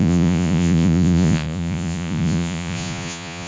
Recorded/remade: remade